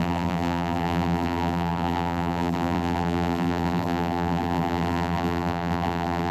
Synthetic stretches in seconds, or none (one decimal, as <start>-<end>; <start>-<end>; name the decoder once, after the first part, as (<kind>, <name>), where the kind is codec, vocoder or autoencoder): 0.0-6.3 (vocoder, BigVGAN v2)